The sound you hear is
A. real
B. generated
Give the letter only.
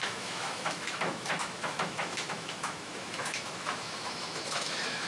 B